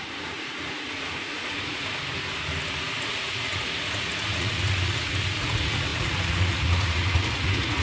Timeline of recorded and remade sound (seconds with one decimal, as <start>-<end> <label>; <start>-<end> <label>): 0.0-1.9 remade; 1.9-3.0 recorded; 3.0-7.8 remade